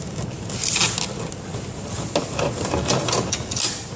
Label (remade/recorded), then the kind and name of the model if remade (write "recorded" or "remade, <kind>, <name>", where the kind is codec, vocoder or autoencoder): recorded